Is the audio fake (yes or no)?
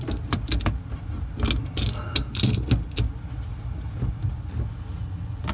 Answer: no